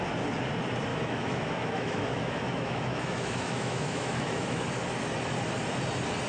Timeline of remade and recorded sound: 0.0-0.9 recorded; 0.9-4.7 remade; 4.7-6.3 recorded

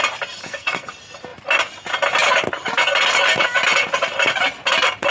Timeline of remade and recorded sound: 0.0-0.4 recorded; 0.4-0.9 remade; 0.9-5.1 recorded

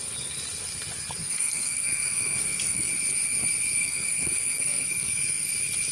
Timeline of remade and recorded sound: 0.0-1.2 recorded; 1.2-2.9 remade; 2.9-3.8 recorded; 3.8-5.5 remade; 5.5-5.9 recorded

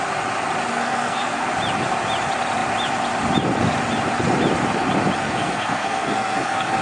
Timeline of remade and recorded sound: 0.0-0.7 recorded; 0.7-1.5 remade; 1.5-5.2 recorded; 5.2-6.8 remade

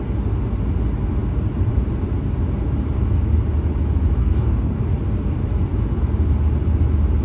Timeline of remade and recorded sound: 0.0-4.2 recorded; 4.2-4.8 remade; 4.8-7.2 recorded

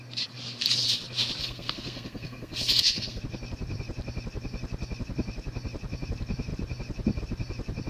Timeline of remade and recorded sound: 0.0-1.4 recorded; 1.4-3.2 remade; 3.2-7.9 recorded